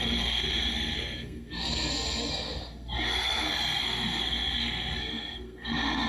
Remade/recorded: remade